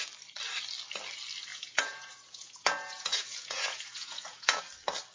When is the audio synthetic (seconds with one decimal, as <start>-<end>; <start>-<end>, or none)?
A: 1.5-4.6